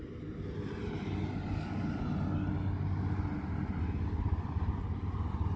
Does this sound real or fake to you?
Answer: real